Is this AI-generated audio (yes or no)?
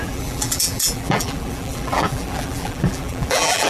yes